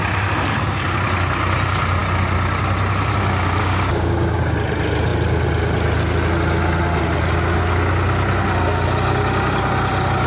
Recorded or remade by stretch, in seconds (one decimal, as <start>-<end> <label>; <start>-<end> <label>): 0.0-3.6 recorded; 3.6-4.4 remade; 4.4-10.3 recorded